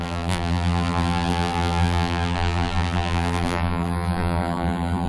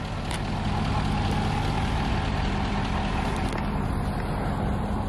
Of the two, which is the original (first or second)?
second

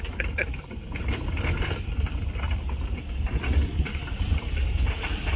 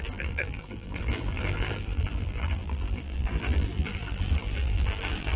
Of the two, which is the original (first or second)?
first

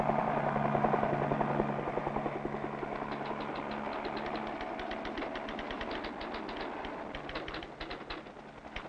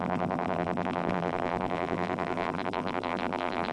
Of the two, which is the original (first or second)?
first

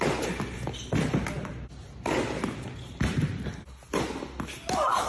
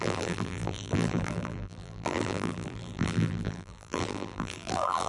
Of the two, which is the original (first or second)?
first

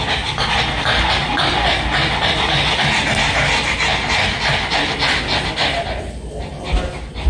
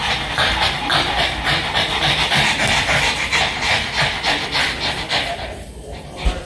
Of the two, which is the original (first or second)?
first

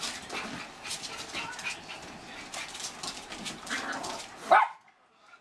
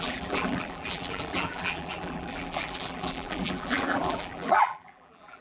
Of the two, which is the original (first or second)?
first